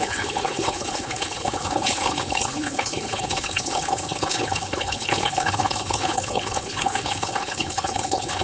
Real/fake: fake